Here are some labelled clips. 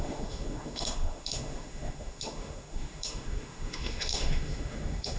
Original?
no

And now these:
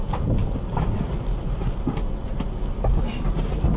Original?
yes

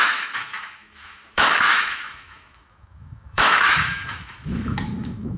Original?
no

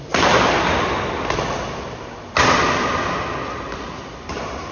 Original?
yes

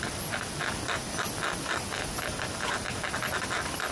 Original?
yes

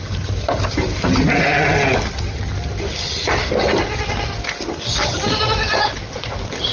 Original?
yes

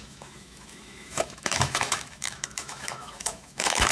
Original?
no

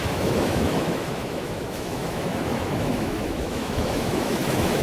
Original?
no